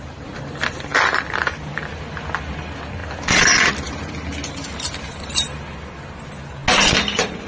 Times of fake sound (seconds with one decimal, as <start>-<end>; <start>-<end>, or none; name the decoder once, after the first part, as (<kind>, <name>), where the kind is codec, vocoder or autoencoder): none

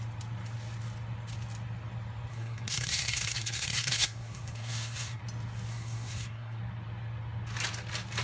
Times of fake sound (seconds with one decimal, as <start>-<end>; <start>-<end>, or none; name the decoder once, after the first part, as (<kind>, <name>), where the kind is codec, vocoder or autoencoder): 2.3-5.2 (codec, SNAC); 5.7-6.6

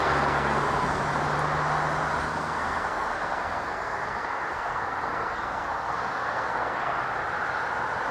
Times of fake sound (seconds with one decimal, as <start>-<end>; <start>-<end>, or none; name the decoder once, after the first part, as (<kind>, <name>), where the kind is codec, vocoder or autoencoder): 0.0-1.0 (codec, SNAC); 2.2-7.0

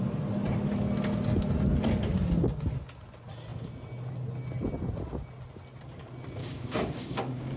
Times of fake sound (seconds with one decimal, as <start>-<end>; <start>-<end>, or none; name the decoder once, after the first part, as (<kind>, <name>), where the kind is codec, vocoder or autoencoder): 6.4-7.6 (codec, DAC)

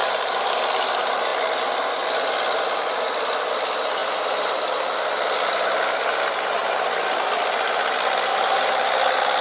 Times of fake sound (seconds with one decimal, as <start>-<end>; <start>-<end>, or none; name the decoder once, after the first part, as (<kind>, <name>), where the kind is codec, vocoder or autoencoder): none

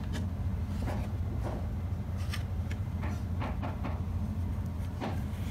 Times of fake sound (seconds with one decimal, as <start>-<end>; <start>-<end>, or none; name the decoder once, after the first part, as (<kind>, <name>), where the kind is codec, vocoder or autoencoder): none